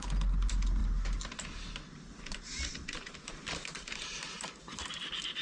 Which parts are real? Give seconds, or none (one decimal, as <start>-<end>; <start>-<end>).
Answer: 0.0-5.4